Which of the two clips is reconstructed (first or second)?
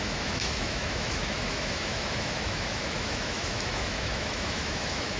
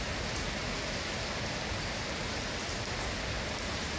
first